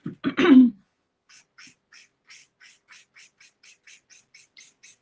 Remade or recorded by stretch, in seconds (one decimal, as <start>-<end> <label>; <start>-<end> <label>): 0.0-0.6 recorded; 0.6-1.4 remade; 1.4-5.0 recorded